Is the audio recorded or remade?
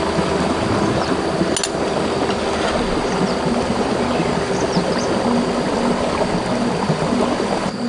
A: recorded